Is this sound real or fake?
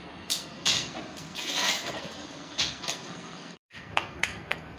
fake